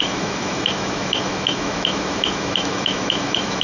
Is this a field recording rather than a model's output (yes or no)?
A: no